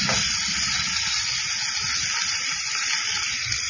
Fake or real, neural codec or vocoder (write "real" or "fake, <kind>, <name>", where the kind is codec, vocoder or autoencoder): real